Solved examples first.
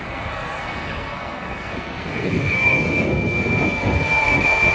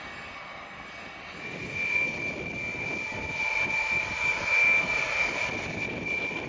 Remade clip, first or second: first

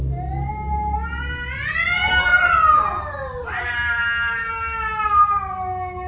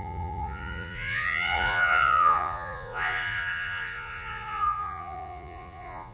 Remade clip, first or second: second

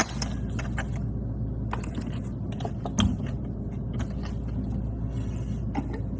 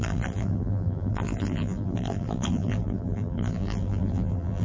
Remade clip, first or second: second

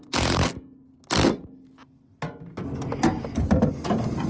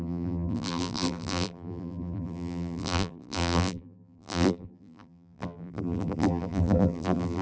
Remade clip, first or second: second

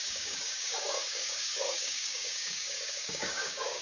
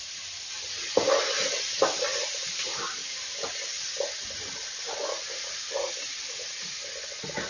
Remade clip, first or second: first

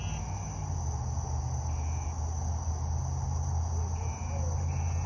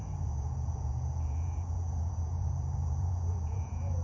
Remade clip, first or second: second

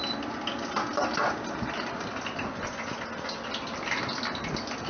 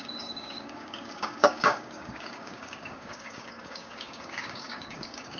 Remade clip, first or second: second